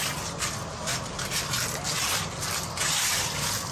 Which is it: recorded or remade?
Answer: recorded